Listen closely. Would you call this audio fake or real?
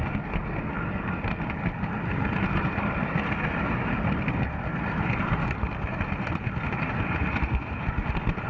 real